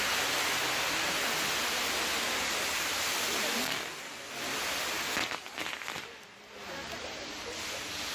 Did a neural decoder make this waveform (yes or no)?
no